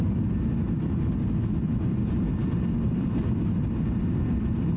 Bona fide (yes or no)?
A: yes